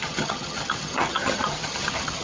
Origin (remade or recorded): remade